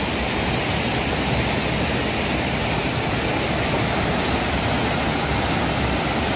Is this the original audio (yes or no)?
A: yes